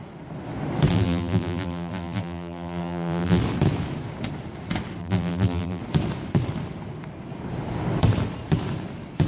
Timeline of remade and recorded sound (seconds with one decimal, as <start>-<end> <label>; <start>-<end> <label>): 0.0-0.9 recorded; 0.9-3.4 remade; 3.4-5.0 recorded; 5.0-5.8 remade; 5.8-9.3 recorded